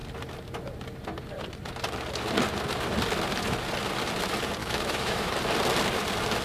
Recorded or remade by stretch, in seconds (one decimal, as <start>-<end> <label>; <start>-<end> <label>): 0.0-4.6 recorded; 4.6-5.3 remade; 5.3-6.4 recorded